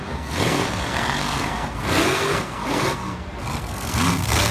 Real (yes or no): no